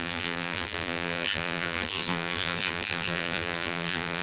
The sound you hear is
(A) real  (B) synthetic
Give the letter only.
B